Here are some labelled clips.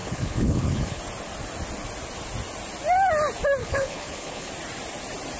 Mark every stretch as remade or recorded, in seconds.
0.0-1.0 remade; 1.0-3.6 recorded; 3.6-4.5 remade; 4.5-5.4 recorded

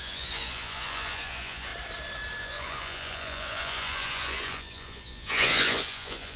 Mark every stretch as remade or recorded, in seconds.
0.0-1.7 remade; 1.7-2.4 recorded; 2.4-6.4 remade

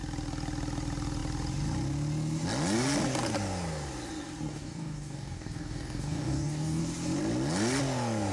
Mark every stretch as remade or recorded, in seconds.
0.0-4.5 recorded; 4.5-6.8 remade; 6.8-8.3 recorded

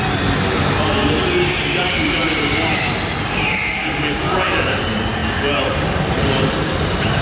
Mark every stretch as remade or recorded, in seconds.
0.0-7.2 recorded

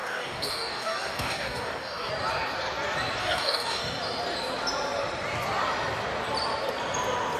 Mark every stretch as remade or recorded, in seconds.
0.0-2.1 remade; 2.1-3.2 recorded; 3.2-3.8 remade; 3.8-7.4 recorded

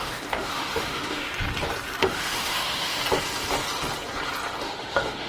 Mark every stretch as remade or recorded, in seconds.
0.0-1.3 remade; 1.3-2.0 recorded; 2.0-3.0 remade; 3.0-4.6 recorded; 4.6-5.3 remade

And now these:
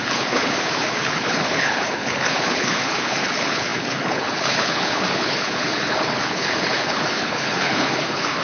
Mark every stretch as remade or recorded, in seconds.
0.0-8.4 remade